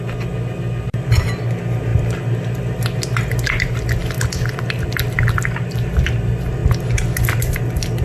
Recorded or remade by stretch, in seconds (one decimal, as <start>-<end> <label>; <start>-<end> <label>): 0.0-8.0 recorded

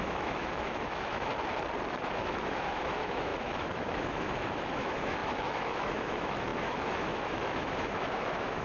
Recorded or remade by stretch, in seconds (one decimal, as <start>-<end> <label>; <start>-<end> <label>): 0.0-1.3 remade; 1.3-1.9 recorded; 1.9-8.6 remade

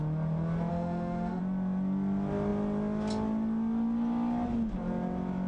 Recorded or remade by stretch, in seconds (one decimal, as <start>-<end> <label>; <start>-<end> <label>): 0.0-0.7 recorded; 0.7-1.4 remade; 1.4-5.5 recorded

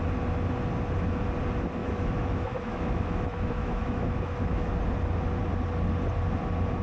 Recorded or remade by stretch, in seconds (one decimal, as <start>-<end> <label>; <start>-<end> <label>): 0.0-1.8 recorded; 1.8-4.8 remade; 4.8-6.8 recorded

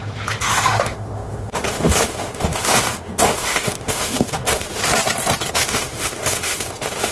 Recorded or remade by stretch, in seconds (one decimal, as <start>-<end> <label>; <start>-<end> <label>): 0.0-4.8 remade; 4.8-5.5 recorded; 5.5-7.1 remade

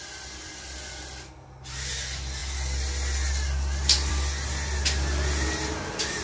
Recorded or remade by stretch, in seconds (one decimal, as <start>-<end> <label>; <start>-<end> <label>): 0.0-6.2 recorded